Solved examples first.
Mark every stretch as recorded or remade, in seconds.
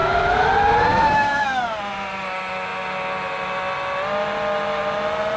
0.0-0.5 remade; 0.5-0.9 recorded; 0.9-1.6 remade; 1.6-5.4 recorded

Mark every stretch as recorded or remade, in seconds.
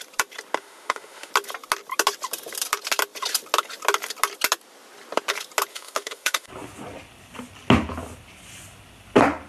0.0-0.6 recorded; 0.6-1.3 remade; 1.3-5.7 recorded; 5.7-6.5 remade; 6.5-9.5 recorded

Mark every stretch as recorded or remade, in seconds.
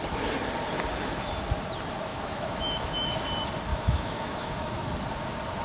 0.0-2.1 recorded; 2.1-3.2 remade; 3.2-3.7 recorded; 3.7-4.9 remade; 4.9-5.6 recorded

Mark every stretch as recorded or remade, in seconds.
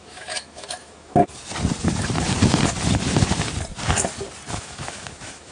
0.0-1.2 remade; 1.2-4.5 recorded; 4.5-5.5 remade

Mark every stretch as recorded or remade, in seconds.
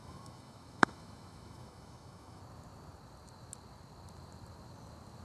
0.0-2.4 remade; 2.4-5.2 recorded